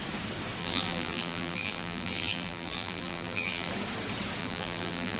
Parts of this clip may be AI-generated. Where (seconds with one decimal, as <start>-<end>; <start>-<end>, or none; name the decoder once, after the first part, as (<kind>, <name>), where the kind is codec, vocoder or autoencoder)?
0.6-3.7 (vocoder, BigVGAN v2); 4.4-5.2